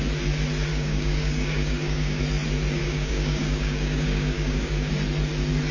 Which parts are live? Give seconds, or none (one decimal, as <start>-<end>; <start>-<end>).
0.0-0.7; 2.2-2.8; 4.9-5.7